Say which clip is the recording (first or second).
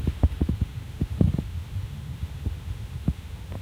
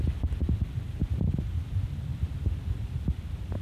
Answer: second